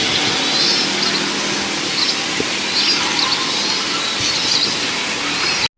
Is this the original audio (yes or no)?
yes